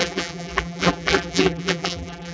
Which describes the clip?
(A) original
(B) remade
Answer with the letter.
B